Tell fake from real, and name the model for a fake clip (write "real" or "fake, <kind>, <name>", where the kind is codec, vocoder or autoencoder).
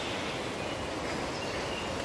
real